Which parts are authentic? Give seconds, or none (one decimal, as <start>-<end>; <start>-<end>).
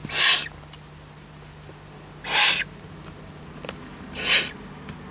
0.0-5.1